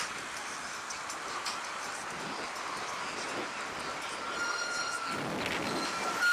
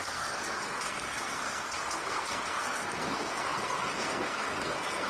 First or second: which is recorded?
first